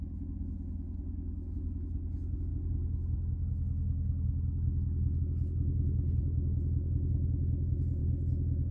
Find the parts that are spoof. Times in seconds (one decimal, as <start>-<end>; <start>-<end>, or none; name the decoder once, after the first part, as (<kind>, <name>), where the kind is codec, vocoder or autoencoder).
none